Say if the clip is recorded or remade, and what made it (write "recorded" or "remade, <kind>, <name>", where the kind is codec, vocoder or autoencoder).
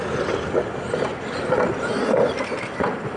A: recorded